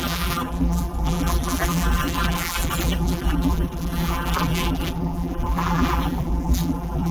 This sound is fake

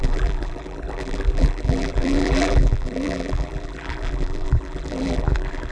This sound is fake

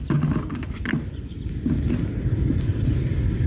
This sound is real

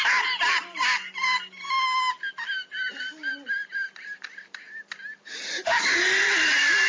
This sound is real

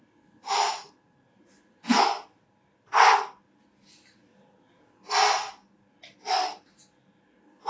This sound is real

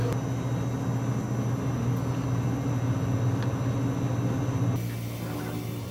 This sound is real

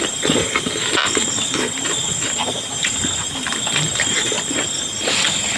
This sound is real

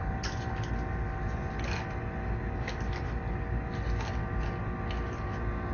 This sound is real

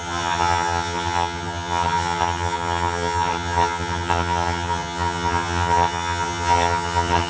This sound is fake